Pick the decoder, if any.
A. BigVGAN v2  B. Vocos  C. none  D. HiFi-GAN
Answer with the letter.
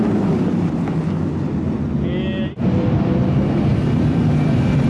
C